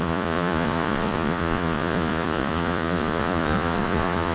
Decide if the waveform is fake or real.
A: fake